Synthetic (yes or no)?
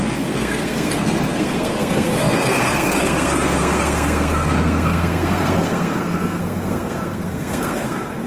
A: yes